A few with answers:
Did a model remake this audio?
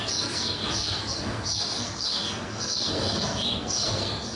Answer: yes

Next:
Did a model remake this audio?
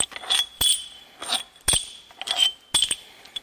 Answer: no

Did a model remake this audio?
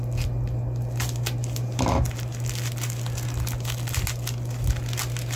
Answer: no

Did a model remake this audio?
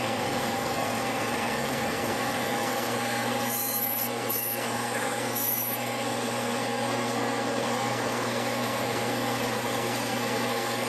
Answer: yes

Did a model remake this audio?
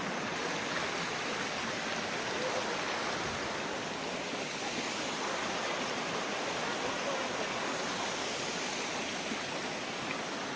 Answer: no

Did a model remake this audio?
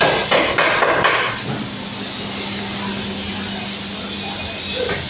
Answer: no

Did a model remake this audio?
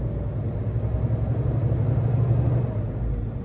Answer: no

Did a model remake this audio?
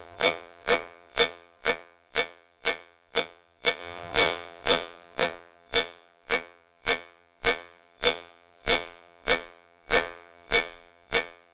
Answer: yes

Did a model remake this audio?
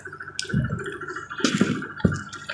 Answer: no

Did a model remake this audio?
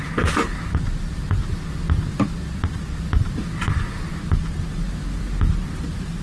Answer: no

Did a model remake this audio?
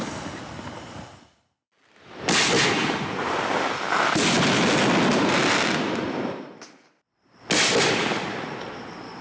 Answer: no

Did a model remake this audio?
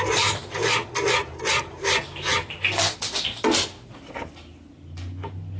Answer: no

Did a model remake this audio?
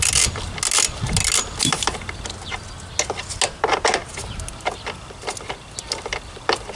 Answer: no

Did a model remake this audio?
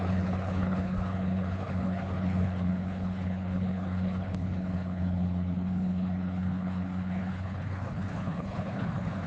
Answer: yes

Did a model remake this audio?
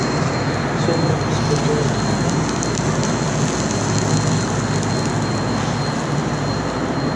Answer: no